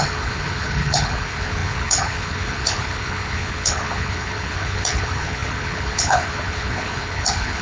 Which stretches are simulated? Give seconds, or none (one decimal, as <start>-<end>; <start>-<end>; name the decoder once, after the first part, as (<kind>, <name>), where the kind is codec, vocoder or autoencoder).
0.0-7.6 (codec, HILCodec)